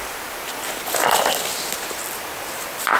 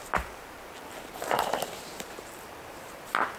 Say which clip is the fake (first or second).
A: second